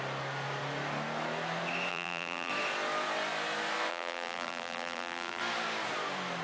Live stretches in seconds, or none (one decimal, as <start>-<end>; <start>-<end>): 0.0-1.9; 2.5-3.9; 5.4-6.4